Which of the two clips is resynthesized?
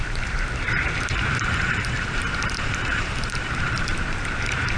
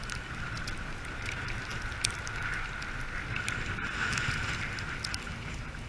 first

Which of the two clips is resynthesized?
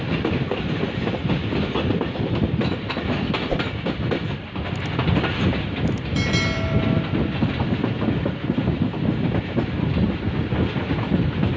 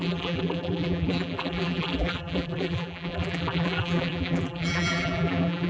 second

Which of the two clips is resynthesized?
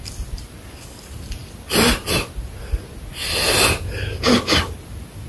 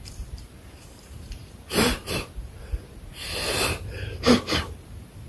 second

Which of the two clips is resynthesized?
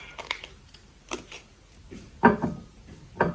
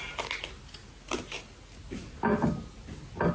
first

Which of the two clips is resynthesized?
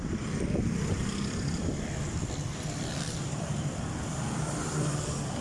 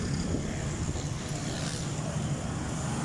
first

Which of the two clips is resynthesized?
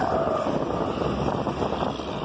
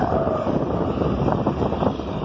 second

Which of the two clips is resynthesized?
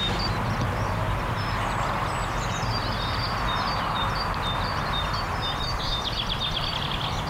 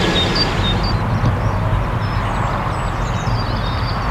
first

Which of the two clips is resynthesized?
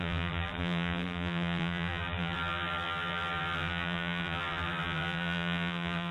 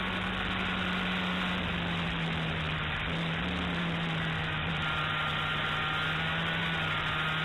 first